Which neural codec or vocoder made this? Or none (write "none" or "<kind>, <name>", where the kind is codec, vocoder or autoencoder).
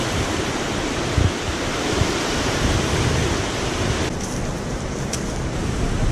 none